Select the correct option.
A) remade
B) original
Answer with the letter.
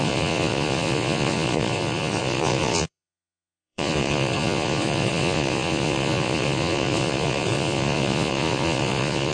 A